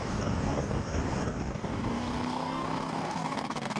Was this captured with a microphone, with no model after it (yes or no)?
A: no